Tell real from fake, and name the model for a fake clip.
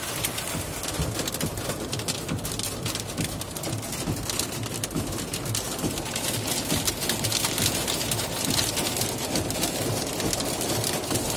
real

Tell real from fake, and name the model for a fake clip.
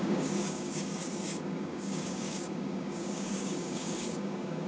fake, codec, DAC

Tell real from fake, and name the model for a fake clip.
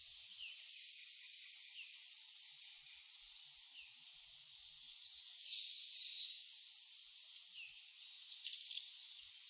real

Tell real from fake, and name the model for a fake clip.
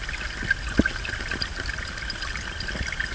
real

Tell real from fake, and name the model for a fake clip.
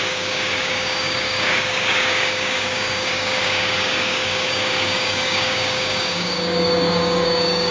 fake, codec, DAC